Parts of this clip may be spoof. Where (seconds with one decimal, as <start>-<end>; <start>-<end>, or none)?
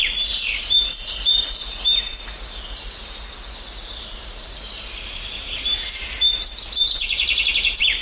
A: 0.0-1.3; 4.0-5.7; 6.8-8.0